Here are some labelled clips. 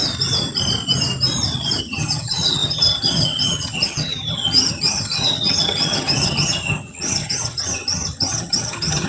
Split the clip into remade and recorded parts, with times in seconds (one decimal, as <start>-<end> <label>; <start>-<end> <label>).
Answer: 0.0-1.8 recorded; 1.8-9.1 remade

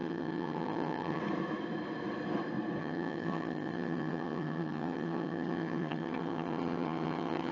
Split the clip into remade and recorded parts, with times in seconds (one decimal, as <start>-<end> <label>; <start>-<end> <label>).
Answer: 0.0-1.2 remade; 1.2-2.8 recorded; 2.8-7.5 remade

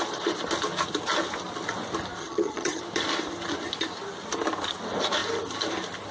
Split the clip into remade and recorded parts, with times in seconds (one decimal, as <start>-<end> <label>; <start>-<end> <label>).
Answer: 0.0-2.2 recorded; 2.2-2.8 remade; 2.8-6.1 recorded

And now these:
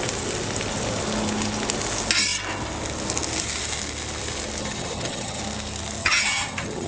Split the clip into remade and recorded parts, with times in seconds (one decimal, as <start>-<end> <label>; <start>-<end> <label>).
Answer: 0.0-4.6 recorded; 4.6-5.4 remade; 5.4-6.0 recorded; 6.0-6.9 remade